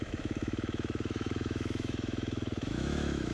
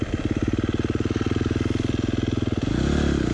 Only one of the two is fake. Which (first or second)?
first